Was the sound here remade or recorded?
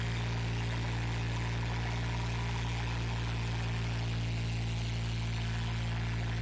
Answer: recorded